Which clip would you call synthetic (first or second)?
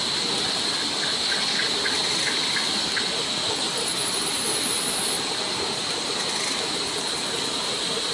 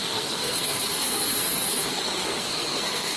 second